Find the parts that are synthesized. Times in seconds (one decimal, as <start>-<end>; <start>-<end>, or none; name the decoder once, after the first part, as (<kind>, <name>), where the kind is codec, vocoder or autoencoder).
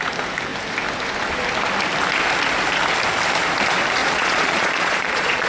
4.0-5.5 (vocoder, Vocos)